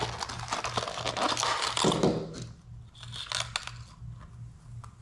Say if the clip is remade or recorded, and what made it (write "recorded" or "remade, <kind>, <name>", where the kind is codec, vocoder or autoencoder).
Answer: recorded